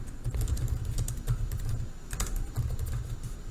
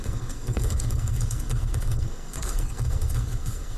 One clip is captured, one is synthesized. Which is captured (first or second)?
first